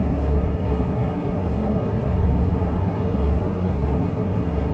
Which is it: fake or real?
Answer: fake